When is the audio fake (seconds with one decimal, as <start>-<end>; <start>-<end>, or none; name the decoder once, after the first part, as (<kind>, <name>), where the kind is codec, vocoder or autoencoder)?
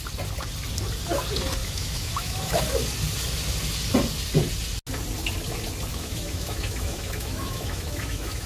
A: 1.6-2.6 (autoencoder, DAC-VAE); 5.9-8.5